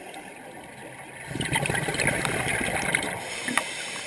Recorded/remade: recorded